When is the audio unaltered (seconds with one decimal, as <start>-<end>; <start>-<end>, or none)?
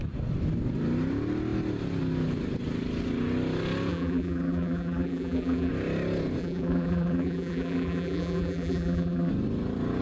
0.0-3.9; 5.7-6.4; 9.3-10.0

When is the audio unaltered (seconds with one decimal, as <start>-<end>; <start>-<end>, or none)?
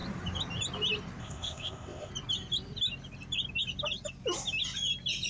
0.0-1.2; 2.1-5.3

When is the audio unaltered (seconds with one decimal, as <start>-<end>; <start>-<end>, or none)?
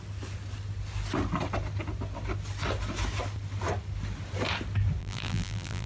0.0-5.0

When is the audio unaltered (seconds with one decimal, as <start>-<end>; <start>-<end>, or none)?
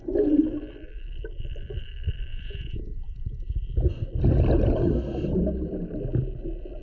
0.0-2.3; 3.4-6.8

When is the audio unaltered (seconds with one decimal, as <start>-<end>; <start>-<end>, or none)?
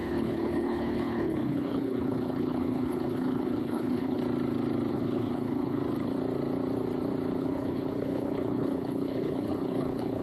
4.2-4.9; 5.8-7.4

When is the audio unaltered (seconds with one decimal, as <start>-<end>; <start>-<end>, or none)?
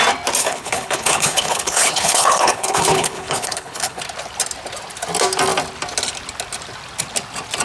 0.0-0.4; 4.0-7.6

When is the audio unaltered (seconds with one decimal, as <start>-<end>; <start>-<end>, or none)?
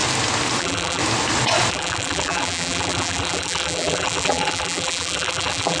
0.0-0.6; 1.0-1.7